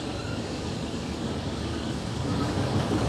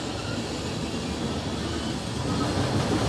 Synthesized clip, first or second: first